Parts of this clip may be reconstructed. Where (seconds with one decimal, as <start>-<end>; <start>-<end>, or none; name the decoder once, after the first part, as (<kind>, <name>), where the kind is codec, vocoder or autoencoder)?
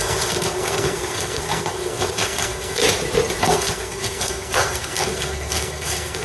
0.0-2.8 (codec, SNAC); 3.4-6.2